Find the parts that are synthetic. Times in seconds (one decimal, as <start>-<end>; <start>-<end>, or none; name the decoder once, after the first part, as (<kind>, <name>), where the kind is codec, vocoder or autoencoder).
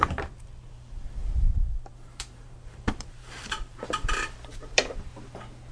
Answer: 0.0-5.1 (vocoder, BigVGAN v2)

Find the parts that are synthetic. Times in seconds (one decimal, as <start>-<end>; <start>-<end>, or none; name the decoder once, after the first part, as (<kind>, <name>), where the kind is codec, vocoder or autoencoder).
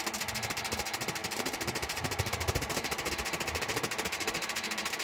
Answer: 1.2-3.1 (vocoder, BigVGAN v2)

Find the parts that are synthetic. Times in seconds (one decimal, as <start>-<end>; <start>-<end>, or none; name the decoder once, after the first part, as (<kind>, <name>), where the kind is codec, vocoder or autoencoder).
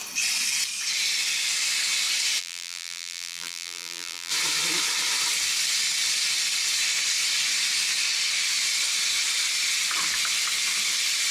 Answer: 2.4-4.3 (vocoder, BigVGAN v2)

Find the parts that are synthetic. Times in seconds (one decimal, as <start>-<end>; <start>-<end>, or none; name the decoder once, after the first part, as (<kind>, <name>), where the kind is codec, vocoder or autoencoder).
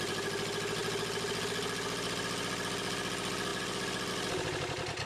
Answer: none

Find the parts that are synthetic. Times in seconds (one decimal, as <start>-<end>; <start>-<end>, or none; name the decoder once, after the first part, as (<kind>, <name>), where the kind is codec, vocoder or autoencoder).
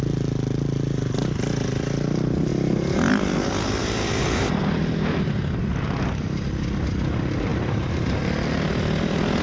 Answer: 3.8-4.6 (vocoder, BigVGAN v2); 7.5-8.2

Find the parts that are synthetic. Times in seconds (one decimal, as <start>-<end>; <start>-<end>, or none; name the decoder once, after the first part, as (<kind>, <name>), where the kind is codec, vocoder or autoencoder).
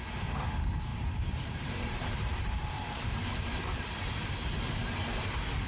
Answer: 0.9-4.3 (vocoder, BigVGAN v2)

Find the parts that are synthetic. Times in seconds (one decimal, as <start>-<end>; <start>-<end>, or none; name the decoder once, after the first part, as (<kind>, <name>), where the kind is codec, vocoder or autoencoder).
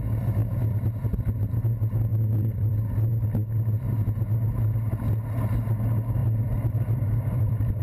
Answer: 2.1-2.7 (vocoder, BigVGAN v2); 6.2-7.8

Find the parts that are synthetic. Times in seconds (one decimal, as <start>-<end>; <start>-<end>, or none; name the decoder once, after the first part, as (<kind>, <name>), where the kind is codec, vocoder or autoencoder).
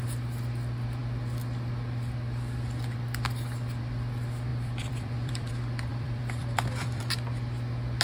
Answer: 4.5-5.5 (vocoder, BigVGAN v2); 5.9-7.0